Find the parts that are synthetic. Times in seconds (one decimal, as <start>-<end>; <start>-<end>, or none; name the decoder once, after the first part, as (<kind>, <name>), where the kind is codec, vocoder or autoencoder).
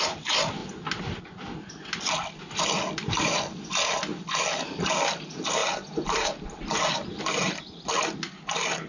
none